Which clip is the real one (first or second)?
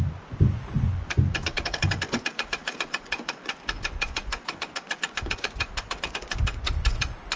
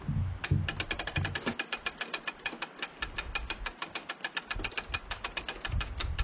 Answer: second